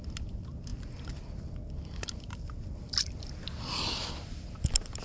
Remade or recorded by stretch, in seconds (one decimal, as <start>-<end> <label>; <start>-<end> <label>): 0.0-5.0 recorded